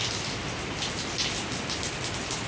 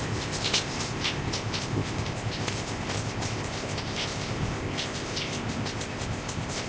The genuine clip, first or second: first